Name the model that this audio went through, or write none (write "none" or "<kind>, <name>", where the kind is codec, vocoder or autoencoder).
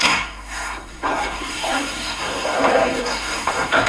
codec, SNAC